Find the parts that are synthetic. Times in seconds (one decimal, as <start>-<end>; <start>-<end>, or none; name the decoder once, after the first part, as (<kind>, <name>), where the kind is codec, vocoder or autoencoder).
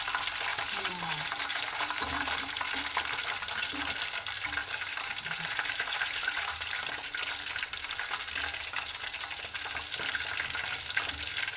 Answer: 0.5-2.1 (vocoder, BigVGAN v2); 4.6-6.7